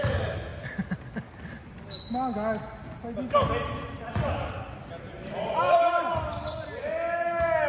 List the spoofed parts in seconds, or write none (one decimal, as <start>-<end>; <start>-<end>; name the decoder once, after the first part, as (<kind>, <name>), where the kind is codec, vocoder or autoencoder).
none